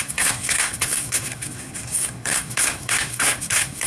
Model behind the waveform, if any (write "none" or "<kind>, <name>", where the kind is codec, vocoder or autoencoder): codec, SNAC